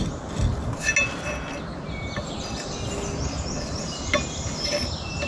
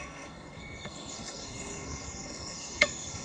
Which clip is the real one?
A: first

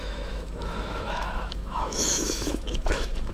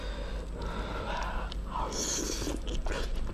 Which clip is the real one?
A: second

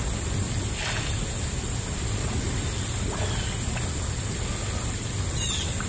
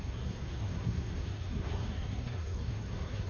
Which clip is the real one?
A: first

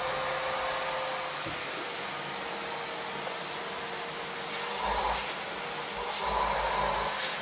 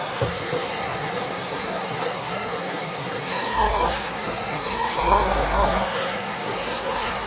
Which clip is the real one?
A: first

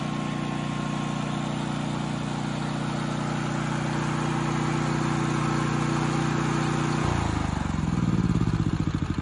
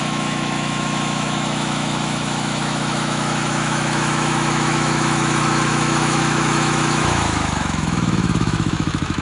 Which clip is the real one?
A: first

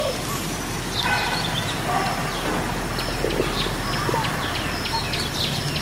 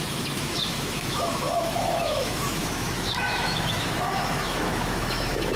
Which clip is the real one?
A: first